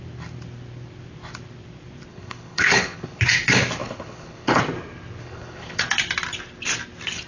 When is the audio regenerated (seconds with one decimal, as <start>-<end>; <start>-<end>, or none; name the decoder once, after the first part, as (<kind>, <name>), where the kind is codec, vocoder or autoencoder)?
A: 2.1-3.2 (codec, HILCodec); 3.8-4.6; 5.2-5.9